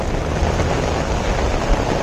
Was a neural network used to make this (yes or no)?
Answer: no